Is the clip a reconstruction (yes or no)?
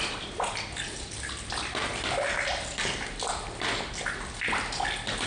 no